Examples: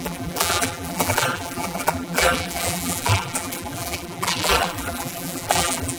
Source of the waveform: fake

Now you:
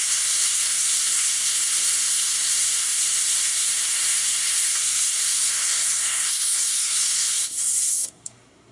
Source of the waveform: fake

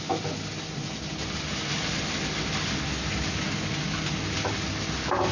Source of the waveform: real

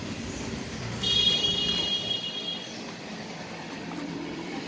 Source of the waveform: fake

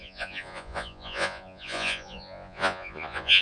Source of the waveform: fake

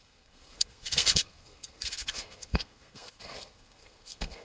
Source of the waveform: fake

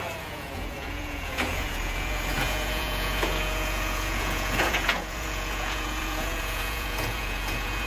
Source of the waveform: fake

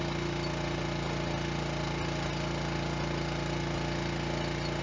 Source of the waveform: real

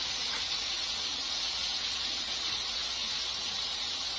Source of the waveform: fake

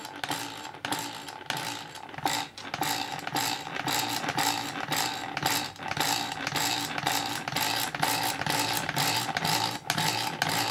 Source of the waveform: real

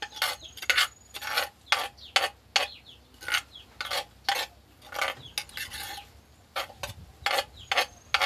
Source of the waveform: real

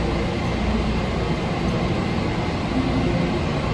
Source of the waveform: real